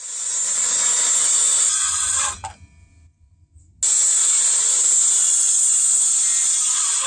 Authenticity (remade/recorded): recorded